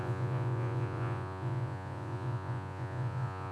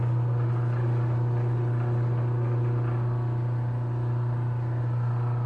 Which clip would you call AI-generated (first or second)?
first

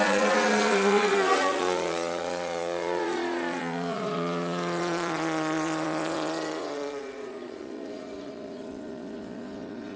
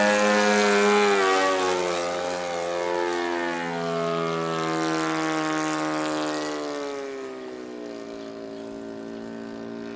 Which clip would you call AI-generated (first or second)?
first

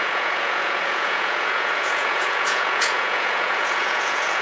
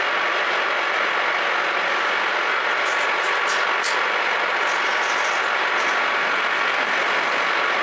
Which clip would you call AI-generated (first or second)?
first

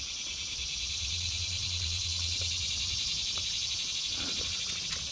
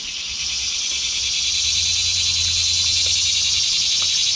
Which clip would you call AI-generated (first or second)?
first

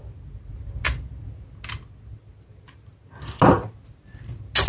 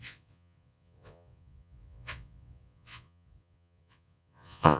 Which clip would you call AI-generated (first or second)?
second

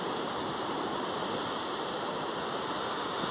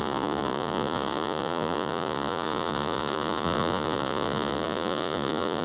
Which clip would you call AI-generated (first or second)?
second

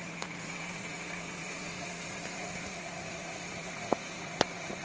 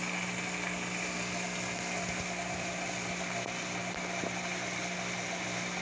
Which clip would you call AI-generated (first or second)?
first